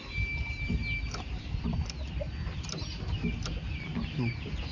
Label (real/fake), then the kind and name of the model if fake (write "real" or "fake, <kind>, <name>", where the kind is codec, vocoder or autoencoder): real